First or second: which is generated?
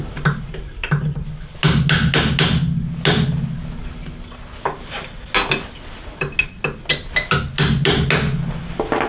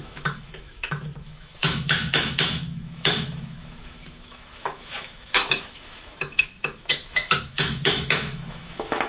second